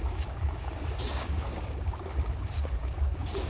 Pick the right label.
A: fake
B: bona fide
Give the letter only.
A